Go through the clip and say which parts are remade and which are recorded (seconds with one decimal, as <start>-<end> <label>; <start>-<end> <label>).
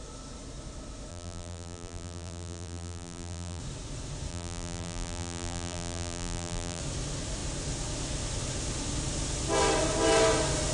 0.0-1.1 recorded; 1.1-3.6 remade; 3.6-4.3 recorded; 4.3-6.8 remade; 6.8-10.7 recorded